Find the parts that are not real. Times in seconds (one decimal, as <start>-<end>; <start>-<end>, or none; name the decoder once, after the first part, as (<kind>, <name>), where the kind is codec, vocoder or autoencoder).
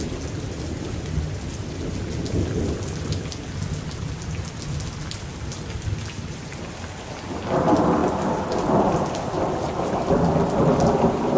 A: none